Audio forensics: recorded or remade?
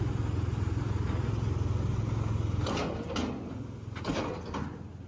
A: recorded